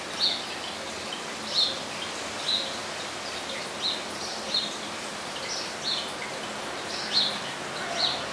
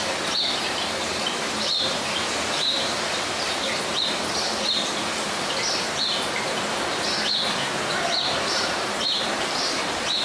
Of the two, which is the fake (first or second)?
second